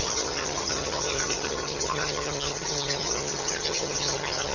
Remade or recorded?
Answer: remade